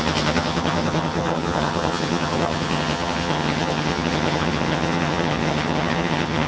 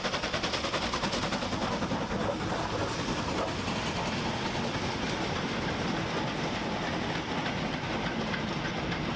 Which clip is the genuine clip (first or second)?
second